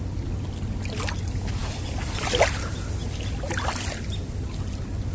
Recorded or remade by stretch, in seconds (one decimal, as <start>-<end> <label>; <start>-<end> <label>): 0.0-5.1 recorded